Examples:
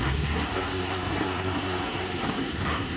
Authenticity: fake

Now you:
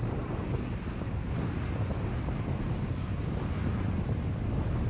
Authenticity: real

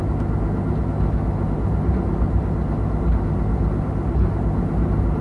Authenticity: real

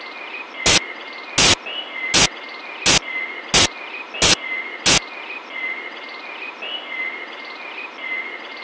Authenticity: real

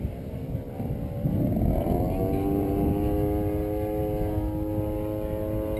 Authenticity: real